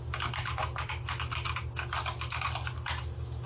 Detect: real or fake real